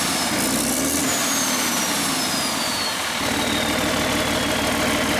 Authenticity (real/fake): real